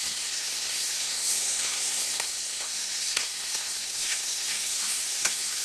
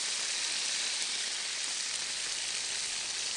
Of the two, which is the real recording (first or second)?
second